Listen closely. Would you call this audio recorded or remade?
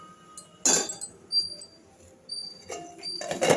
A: recorded